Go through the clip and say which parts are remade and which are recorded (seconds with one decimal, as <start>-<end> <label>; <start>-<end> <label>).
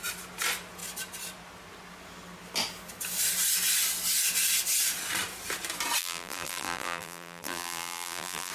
0.0-6.0 recorded; 6.0-8.5 remade